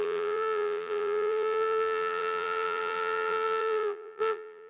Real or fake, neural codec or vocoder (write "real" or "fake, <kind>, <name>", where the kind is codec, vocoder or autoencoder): fake, vocoder, BigVGAN v2